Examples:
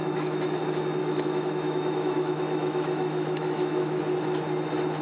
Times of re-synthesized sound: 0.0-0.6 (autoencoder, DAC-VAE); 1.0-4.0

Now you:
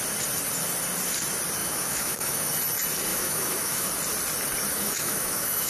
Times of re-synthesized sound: 1.6-2.5 (autoencoder, DAC-VAE); 3.1-3.9; 4.7-5.7

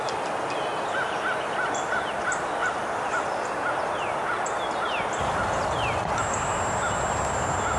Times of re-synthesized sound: none

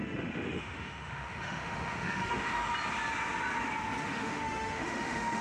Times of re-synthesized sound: 0.0-2.7 (autoencoder, DAC-VAE); 4.0-5.4